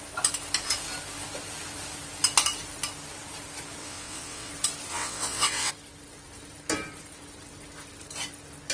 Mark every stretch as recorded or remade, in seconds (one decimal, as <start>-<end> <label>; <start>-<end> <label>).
0.0-3.8 recorded; 3.8-4.5 remade; 4.5-4.9 recorded; 4.9-5.7 remade; 5.7-8.7 recorded